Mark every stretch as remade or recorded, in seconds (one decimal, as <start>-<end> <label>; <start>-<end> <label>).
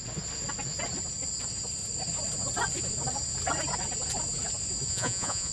0.0-4.9 recorded; 4.9-5.5 remade